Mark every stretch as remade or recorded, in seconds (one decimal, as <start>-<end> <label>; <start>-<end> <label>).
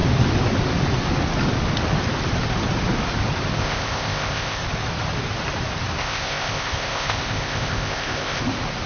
0.0-3.6 recorded; 3.6-4.6 remade; 4.6-6.0 recorded; 6.0-8.4 remade; 8.4-8.9 recorded